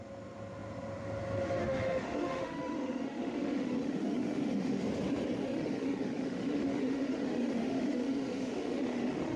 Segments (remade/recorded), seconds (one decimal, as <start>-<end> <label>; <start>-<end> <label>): 0.0-1.6 recorded; 1.6-4.8 remade; 4.8-5.4 recorded; 5.4-9.4 remade